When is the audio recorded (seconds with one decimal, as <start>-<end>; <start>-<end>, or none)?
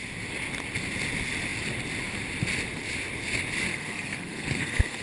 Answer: 0.0-3.7